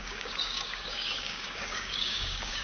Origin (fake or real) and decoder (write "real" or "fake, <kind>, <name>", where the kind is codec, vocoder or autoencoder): fake, codec, DAC